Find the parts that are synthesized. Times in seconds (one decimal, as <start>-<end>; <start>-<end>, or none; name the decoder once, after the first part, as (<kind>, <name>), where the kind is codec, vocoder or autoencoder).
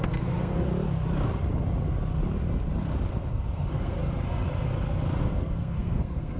0.0-0.7 (codec, SNAC); 3.1-4.0; 5.2-6.4